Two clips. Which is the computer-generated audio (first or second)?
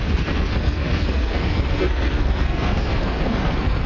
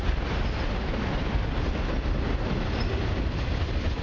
first